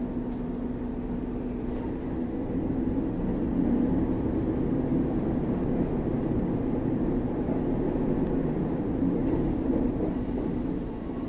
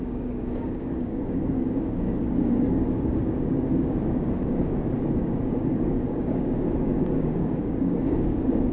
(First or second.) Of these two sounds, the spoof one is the second